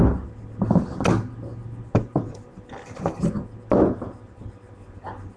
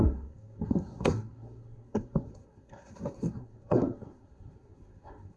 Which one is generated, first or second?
second